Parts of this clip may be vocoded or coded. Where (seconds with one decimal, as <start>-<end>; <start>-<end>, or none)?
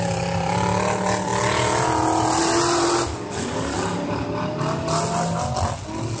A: none